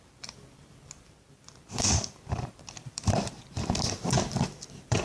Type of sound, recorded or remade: remade